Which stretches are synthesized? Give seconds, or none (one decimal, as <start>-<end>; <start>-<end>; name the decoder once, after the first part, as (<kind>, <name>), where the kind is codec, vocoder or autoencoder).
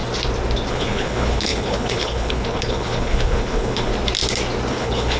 0.7-3.9 (codec, HILCodec); 4.7-5.2